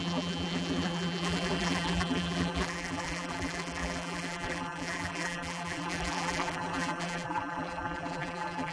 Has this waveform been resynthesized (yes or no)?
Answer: yes